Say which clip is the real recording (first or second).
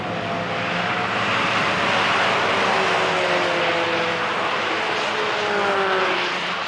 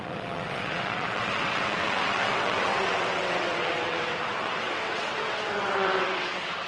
first